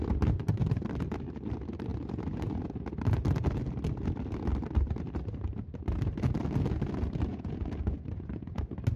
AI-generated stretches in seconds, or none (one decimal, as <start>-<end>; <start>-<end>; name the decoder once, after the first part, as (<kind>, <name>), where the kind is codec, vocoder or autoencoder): 7.3-8.6 (vocoder, Vocos)